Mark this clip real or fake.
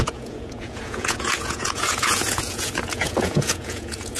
fake